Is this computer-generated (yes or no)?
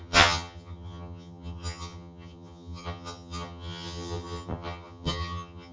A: yes